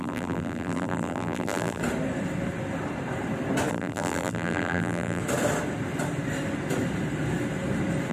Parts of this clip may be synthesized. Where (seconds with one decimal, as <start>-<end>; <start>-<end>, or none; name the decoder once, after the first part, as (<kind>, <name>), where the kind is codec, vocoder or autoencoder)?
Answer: 0.0-1.8 (vocoder, BigVGAN v2); 3.7-5.2